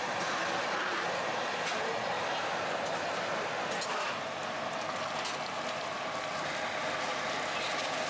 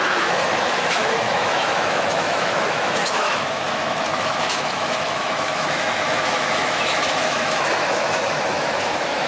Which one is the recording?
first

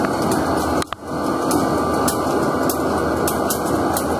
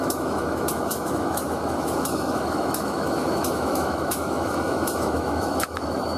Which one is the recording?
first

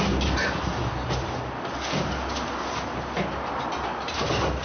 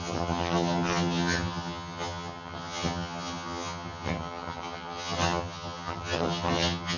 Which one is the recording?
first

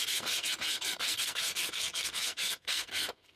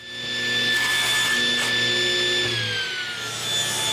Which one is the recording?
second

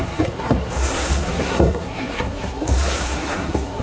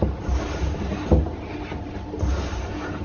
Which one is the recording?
second